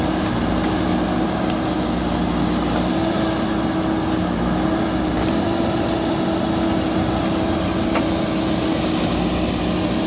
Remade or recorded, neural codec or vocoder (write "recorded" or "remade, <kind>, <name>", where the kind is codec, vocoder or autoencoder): recorded